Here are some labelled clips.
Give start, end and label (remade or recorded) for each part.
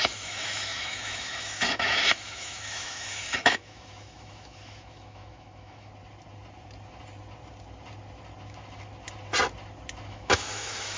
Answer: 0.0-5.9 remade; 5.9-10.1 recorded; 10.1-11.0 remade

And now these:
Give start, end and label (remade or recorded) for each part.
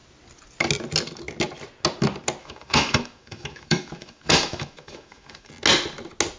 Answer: 0.0-2.4 recorded; 2.4-5.5 remade; 5.5-6.4 recorded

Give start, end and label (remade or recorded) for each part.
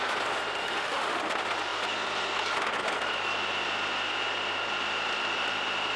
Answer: 0.0-0.6 recorded; 0.6-1.2 remade; 1.2-6.0 recorded